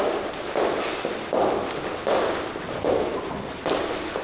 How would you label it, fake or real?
real